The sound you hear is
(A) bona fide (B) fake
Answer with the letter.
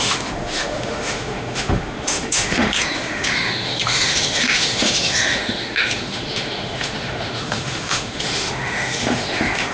B